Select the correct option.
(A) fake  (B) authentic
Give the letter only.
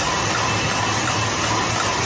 B